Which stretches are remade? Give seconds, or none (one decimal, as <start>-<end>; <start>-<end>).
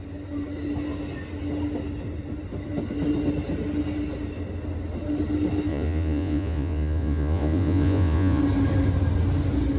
5.7-8.4